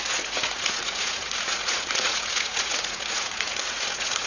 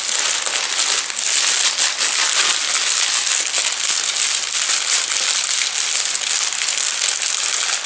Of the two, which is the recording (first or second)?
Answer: second